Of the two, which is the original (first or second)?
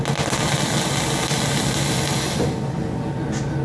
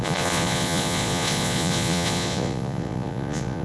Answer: first